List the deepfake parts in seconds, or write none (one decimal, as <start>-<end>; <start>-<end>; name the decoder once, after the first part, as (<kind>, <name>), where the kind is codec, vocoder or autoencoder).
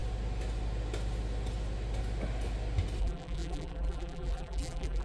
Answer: 3.0-5.0 (vocoder, BigVGAN v2)